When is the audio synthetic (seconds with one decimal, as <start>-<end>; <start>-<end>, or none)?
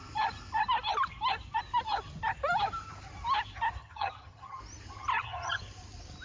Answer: 3.8-4.6; 5.1-5.6